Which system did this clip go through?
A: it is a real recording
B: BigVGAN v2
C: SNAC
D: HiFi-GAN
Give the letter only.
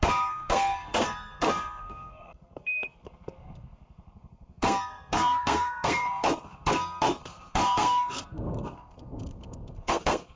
C